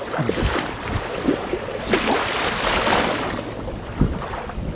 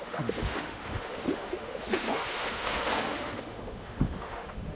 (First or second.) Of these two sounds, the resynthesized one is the second